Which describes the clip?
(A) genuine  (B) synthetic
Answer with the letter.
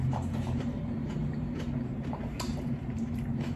B